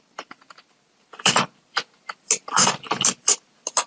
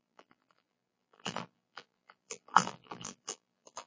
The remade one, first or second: second